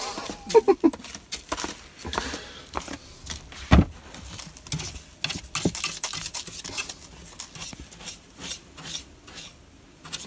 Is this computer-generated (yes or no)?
no